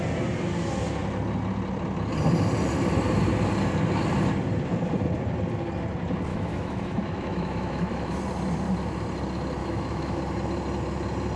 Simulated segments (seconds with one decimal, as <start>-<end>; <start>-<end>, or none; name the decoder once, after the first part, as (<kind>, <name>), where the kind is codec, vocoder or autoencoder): 6.3-8.2 (autoencoder, DAC-VAE); 9.6-10.2